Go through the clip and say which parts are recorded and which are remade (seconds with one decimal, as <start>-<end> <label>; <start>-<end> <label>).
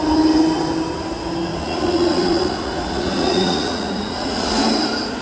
0.0-1.5 recorded; 1.5-4.6 remade; 4.6-5.2 recorded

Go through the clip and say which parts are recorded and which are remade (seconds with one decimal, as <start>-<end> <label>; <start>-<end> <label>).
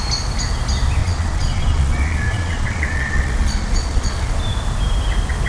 0.0-1.0 recorded; 1.0-4.3 remade; 4.3-5.5 recorded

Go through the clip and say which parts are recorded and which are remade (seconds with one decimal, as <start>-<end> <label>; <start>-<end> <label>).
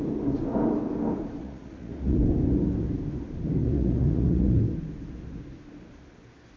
0.0-1.4 recorded; 1.4-2.2 remade; 2.2-3.6 recorded; 3.6-4.6 remade; 4.6-6.6 recorded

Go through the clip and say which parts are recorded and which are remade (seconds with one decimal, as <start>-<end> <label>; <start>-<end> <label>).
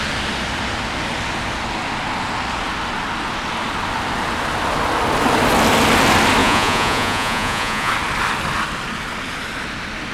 0.0-6.4 recorded; 6.4-7.9 remade; 7.9-10.1 recorded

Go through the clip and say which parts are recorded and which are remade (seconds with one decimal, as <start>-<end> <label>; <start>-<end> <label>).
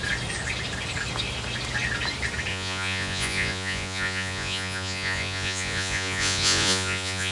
0.0-2.5 recorded; 2.5-7.3 remade